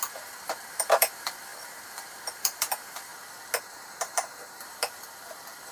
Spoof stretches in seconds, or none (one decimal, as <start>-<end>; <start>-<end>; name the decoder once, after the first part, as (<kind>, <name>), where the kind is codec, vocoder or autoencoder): 0.0-3.1 (vocoder, BigVGAN v2); 3.6-5.7